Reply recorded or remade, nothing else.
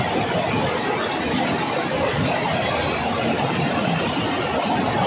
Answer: recorded